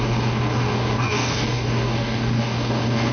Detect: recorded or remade remade